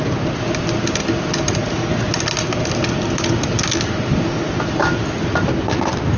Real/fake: real